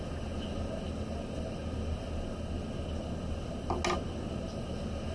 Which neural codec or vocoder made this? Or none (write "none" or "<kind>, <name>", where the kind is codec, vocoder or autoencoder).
none